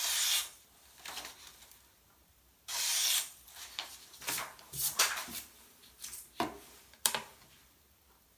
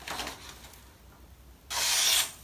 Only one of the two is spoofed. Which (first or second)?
first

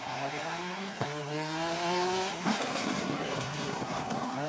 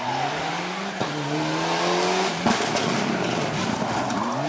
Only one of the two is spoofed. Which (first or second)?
first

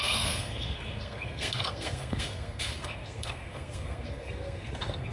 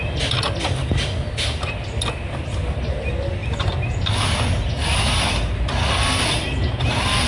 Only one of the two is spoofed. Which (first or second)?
first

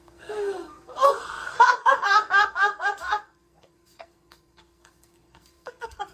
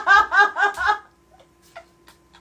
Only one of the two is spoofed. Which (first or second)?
first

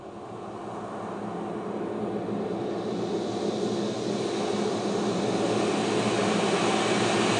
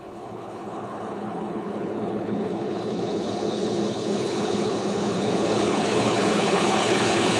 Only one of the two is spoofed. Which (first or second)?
second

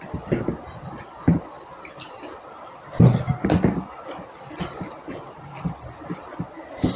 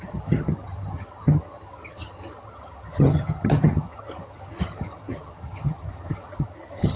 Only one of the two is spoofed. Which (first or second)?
second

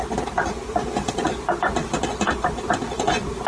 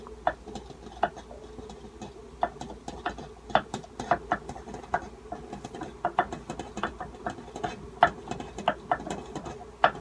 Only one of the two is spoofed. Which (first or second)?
first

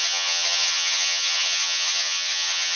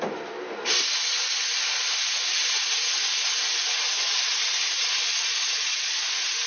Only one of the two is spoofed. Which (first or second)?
first